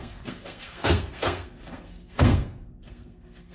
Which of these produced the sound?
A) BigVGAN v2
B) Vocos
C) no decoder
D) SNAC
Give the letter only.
D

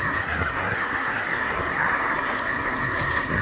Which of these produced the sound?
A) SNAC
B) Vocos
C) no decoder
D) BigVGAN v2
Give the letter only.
A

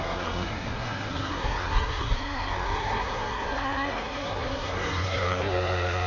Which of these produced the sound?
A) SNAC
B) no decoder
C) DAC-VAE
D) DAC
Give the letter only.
A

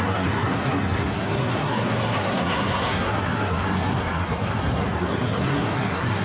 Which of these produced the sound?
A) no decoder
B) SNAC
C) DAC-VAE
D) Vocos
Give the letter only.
B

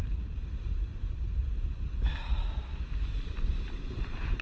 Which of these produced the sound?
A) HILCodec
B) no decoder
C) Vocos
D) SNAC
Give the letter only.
B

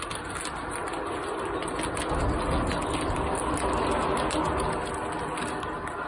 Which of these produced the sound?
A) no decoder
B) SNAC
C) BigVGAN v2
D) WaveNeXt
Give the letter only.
A